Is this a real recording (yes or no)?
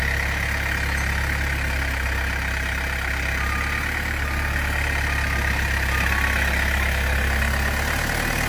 yes